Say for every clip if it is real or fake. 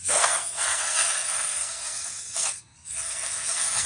fake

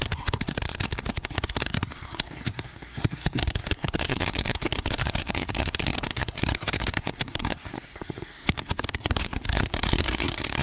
fake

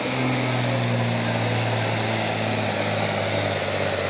real